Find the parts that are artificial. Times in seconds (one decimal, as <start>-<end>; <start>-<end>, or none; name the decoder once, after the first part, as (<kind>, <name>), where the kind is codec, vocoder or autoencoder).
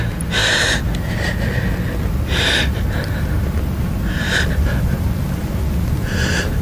0.0-0.4 (vocoder, BigVGAN v2); 4.4-6.6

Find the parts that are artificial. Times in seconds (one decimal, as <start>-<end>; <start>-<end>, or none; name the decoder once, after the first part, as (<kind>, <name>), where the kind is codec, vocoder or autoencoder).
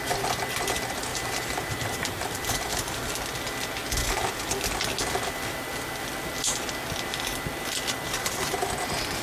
1.1-3.1 (vocoder, BigVGAN v2)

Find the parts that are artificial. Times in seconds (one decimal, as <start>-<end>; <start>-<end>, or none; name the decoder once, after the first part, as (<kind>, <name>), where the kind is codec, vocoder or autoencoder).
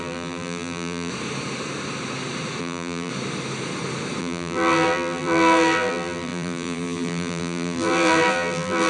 0.0-1.1 (vocoder, BigVGAN v2); 2.6-3.1; 4.2-8.9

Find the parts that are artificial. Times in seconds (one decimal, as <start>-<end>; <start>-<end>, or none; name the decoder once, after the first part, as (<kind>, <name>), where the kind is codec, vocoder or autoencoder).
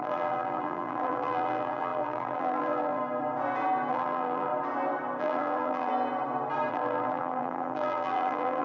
0.0-3.0 (vocoder, BigVGAN v2); 3.9-4.5; 5.2-5.9; 6.7-8.6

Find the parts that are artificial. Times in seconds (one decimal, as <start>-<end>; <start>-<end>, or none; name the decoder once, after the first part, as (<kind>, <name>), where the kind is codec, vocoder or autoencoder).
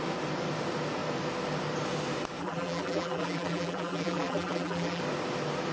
2.4-5.0 (vocoder, BigVGAN v2)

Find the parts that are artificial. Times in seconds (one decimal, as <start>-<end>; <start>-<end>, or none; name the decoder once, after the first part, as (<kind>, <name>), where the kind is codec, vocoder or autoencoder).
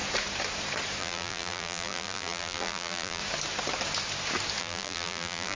1.0-3.2 (vocoder, BigVGAN v2); 4.6-5.5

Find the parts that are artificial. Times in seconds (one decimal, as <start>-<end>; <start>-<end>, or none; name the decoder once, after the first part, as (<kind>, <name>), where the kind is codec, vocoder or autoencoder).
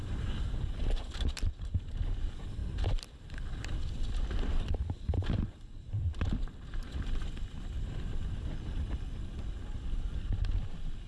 0.0-11.1 (vocoder, BigVGAN v2)